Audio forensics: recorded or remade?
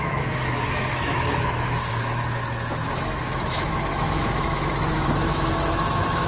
remade